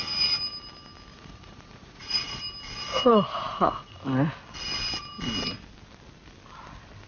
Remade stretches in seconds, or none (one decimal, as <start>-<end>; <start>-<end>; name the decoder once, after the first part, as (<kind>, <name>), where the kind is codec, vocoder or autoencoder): 1.1-2.4 (vocoder, Vocos); 3.1-4.0